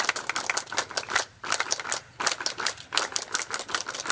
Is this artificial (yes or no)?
no